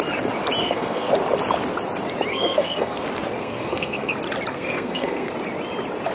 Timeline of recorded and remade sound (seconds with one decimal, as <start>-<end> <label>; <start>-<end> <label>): 0.0-0.6 recorded; 0.6-1.1 remade; 1.1-2.3 recorded; 2.3-3.0 remade; 3.0-3.4 recorded; 3.4-4.1 remade; 4.1-4.5 recorded; 4.5-5.3 remade; 5.3-6.1 recorded